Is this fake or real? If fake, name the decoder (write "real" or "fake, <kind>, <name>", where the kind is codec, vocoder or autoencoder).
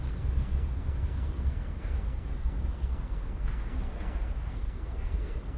fake, codec, SNAC